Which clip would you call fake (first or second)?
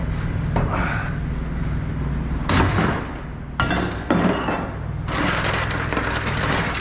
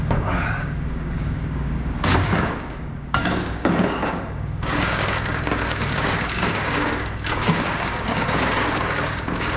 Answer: second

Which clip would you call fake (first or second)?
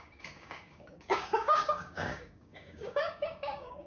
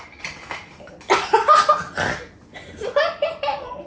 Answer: first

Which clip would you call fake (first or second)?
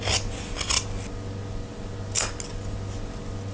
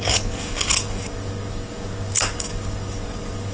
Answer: second